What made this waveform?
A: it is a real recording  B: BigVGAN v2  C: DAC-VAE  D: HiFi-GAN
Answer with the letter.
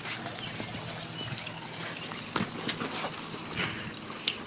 A